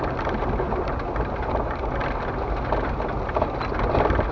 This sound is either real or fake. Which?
real